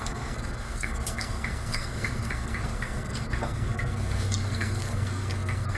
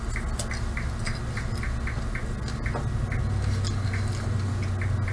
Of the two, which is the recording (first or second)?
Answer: second